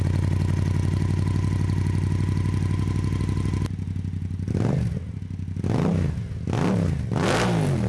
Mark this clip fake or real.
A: real